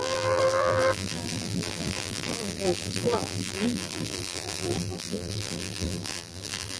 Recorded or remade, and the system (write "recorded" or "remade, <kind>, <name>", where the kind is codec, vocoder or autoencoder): remade, vocoder, BigVGAN v2